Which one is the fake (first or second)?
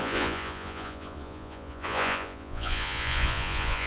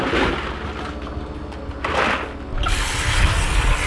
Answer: first